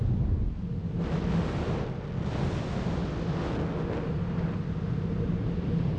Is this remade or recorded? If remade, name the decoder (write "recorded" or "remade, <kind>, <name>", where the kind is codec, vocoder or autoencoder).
recorded